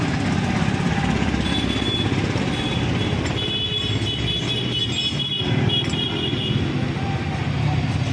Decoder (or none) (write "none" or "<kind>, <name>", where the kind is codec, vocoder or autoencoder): none